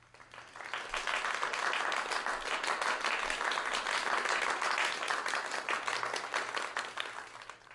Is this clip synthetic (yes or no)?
no